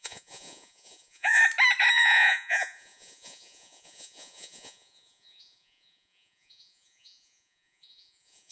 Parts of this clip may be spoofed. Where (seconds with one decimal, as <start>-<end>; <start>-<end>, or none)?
0.0-1.4; 1.9-8.5